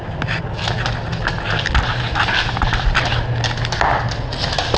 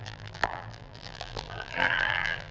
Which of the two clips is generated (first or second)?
second